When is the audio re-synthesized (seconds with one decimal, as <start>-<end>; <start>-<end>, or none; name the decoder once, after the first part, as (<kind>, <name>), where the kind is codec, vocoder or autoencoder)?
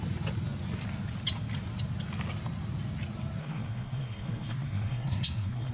3.4-5.7 (codec, SNAC)